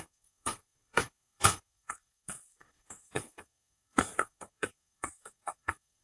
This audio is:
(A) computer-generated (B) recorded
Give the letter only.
A